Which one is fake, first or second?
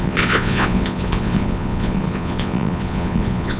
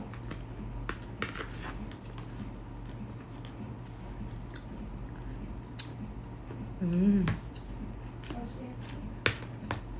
first